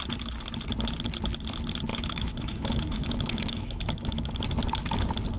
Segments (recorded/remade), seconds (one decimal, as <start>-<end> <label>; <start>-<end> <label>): 0.0-1.9 recorded; 1.9-4.3 remade; 4.3-5.4 recorded